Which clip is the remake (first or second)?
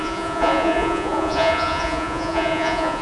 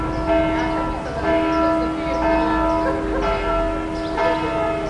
first